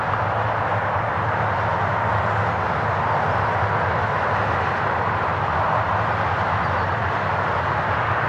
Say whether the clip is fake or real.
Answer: real